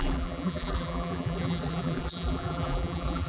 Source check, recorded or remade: remade